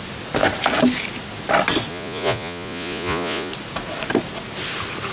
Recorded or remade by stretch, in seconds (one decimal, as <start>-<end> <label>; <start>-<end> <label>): 0.0-1.9 recorded; 1.9-3.5 remade; 3.5-5.1 recorded